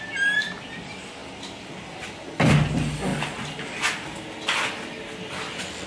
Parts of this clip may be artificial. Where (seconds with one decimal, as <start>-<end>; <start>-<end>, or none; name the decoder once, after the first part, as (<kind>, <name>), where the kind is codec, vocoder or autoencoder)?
none